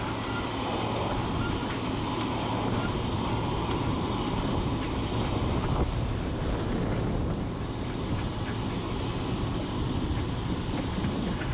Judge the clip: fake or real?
real